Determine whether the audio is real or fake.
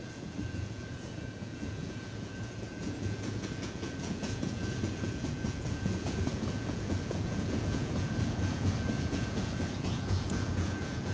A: fake